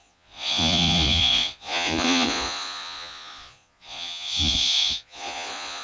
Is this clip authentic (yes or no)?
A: no